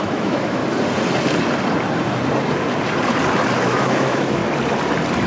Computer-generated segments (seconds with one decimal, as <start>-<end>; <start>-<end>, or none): 0.0-0.6; 3.6-4.4